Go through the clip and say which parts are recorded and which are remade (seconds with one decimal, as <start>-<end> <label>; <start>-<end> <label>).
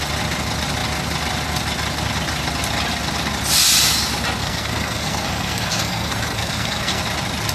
0.0-4.4 recorded; 4.4-7.0 remade; 7.0-7.5 recorded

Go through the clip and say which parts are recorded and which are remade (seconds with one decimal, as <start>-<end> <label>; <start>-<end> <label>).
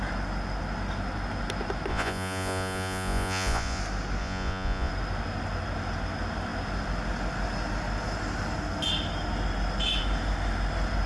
0.0-1.9 recorded; 1.9-3.8 remade; 3.8-4.2 recorded; 4.2-4.9 remade; 4.9-11.1 recorded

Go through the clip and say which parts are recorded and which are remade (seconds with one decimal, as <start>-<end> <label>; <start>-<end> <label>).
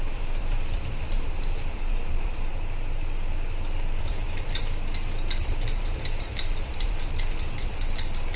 0.0-2.5 remade; 2.5-4.0 recorded; 4.0-4.6 remade; 4.6-5.4 recorded; 5.4-8.4 remade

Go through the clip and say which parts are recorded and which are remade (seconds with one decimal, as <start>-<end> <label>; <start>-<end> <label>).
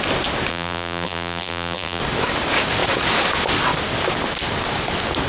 0.0-0.5 recorded; 0.5-2.0 remade; 2.0-5.3 recorded